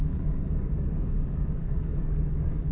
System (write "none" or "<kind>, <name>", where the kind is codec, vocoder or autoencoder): codec, DAC